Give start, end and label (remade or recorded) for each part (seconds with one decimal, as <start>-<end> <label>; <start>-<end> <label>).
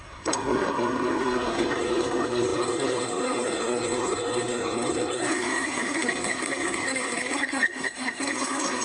0.0-8.8 remade